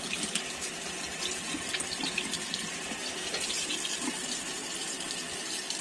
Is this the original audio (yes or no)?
yes